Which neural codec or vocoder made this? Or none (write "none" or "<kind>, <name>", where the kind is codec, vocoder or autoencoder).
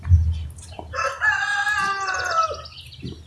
none